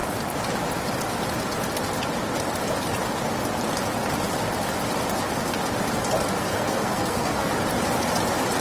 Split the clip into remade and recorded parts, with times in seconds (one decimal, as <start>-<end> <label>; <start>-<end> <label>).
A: 0.0-6.4 recorded; 6.4-7.5 remade; 7.5-8.6 recorded